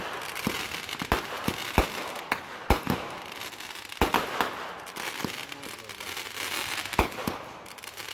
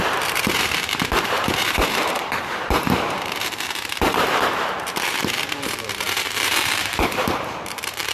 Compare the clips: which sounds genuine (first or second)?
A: first